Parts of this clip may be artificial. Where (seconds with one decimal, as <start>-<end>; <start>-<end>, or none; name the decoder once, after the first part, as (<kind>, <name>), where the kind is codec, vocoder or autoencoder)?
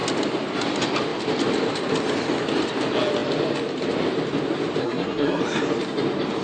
4.8-5.4 (codec, SNAC)